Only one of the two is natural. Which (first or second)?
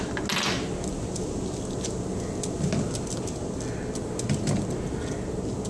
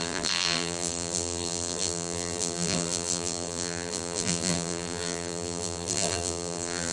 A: first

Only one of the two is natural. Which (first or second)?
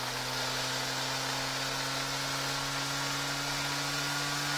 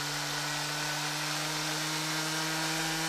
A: first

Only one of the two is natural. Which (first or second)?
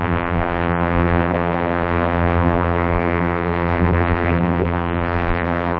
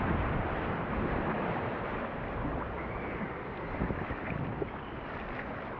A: second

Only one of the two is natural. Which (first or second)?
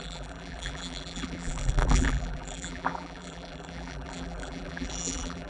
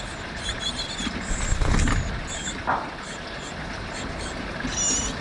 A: second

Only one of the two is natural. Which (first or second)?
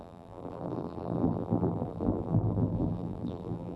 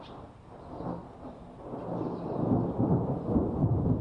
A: second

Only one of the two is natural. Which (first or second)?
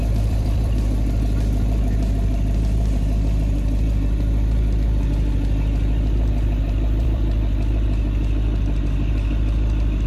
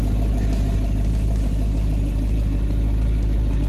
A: second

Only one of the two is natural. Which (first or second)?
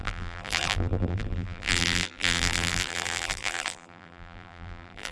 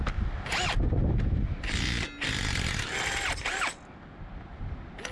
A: second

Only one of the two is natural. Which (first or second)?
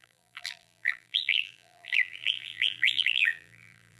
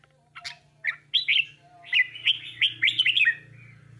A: second